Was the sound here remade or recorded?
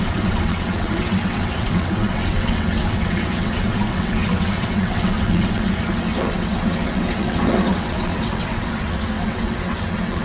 remade